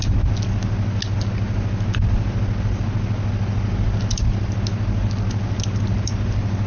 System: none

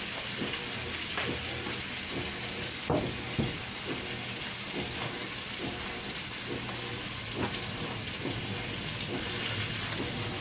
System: none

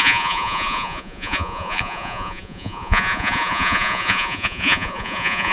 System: vocoder, Vocos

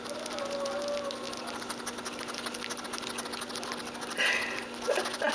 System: none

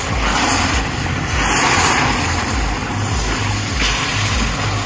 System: none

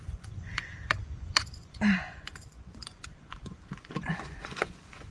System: vocoder, Vocos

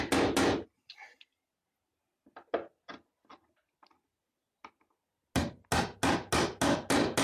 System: none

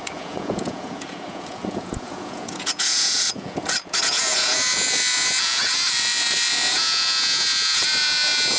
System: vocoder, Vocos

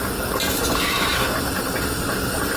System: none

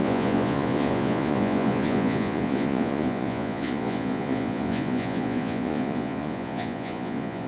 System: vocoder, Vocos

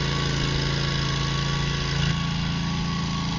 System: none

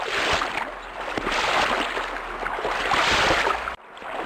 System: none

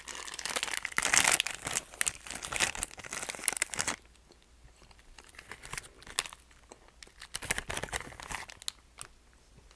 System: none